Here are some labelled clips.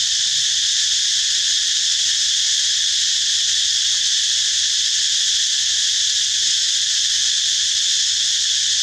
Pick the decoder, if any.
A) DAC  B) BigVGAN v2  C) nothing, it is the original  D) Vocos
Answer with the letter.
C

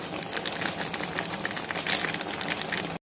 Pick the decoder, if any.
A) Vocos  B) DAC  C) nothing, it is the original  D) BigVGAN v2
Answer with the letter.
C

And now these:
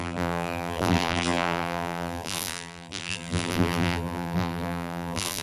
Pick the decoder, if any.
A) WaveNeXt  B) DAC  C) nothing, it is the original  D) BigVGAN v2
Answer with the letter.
D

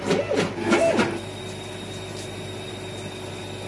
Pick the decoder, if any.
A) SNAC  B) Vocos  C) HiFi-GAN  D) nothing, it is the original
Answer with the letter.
D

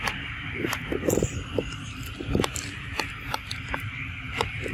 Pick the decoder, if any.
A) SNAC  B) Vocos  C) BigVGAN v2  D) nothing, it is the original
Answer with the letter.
D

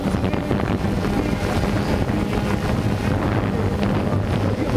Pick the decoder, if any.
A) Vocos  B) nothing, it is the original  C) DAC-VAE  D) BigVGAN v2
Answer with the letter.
B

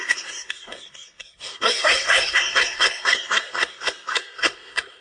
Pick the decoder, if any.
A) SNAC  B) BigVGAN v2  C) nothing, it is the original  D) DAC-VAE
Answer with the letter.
A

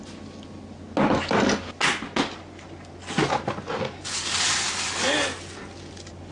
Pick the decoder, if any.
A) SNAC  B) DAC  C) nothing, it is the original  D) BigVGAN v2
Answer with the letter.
C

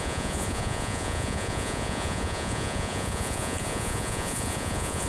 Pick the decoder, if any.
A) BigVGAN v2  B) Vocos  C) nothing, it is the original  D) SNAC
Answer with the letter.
B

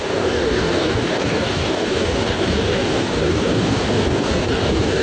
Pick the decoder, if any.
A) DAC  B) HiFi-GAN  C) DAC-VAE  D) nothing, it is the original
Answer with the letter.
A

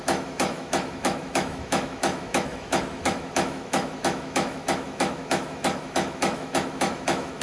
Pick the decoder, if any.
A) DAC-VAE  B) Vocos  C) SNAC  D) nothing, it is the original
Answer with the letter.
A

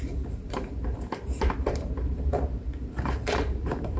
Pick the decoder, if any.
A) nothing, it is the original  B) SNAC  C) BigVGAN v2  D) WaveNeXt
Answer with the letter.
C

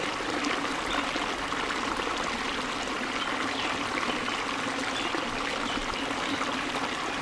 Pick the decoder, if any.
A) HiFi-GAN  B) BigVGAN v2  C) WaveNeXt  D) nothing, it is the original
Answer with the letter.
D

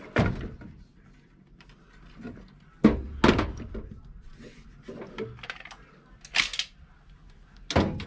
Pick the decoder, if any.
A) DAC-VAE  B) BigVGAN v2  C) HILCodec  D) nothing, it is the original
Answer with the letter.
D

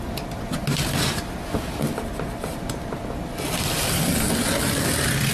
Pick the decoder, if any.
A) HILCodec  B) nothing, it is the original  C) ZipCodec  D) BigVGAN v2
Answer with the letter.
B